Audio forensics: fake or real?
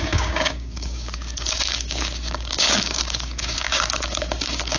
fake